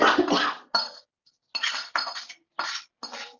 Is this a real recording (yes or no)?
yes